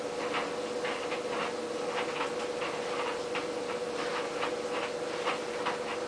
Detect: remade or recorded recorded